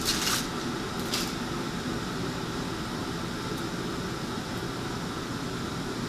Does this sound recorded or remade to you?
recorded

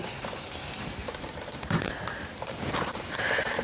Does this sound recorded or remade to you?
remade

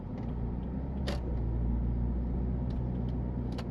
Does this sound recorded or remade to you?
recorded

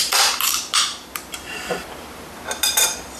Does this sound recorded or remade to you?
remade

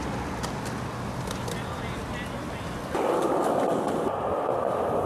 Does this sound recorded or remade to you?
recorded